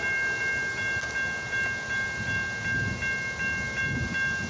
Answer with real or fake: real